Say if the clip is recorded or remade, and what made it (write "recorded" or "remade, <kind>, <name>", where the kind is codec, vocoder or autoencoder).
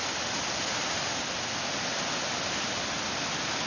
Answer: recorded